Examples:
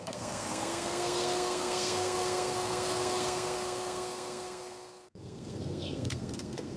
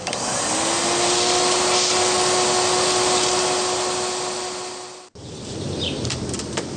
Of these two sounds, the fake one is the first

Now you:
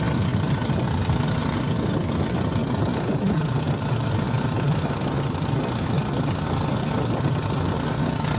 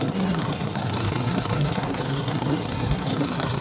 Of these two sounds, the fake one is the second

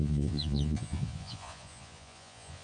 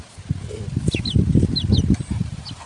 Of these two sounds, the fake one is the first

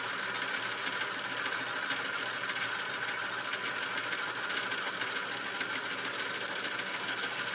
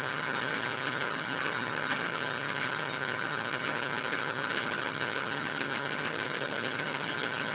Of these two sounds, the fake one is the second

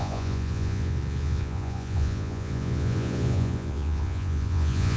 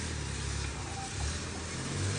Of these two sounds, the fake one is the first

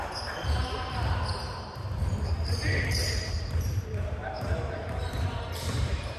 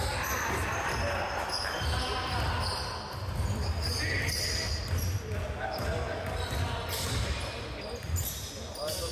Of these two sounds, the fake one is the first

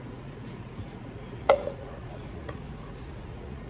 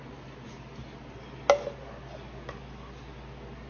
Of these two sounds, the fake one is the first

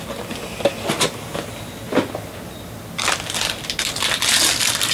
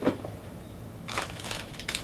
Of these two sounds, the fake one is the second